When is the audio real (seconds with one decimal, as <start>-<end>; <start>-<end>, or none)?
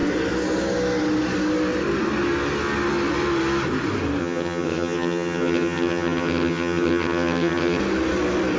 0.0-4.2; 7.8-8.6